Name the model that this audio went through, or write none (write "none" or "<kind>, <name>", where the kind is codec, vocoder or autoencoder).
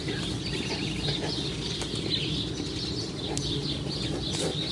none